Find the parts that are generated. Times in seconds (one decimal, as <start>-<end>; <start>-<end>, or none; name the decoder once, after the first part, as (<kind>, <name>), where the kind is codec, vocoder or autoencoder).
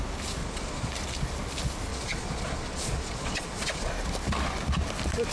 0.4-0.9 (vocoder, Vocos); 1.9-3.9